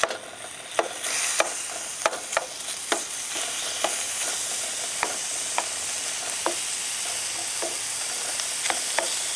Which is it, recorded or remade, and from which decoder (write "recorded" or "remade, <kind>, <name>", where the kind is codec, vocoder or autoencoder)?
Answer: recorded